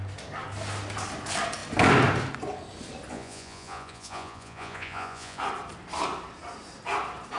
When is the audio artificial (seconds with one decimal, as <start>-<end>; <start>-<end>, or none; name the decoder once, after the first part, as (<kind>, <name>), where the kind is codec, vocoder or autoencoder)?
3.1-5.4 (vocoder, Vocos)

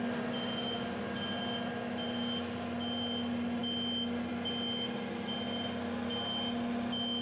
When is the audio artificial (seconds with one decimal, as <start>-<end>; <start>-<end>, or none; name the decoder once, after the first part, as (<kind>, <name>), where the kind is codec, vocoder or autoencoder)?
none